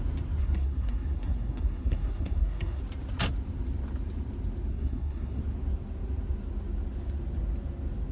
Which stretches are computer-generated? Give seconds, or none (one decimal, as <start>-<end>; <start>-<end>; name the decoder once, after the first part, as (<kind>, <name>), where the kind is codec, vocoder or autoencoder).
0.4-2.8 (codec, SNAC); 4.7-5.4